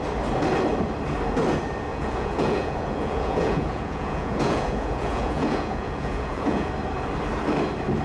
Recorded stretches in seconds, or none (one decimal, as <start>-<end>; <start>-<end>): 0.0-1.9; 6.7-8.0